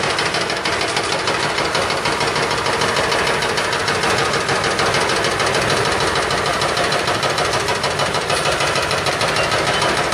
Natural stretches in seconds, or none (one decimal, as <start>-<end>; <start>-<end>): 0.0-6.5; 9.1-10.1